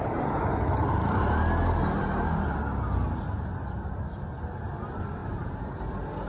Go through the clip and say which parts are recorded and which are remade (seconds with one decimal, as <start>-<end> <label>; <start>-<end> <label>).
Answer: 0.0-5.2 recorded; 5.2-5.8 remade; 5.8-6.3 recorded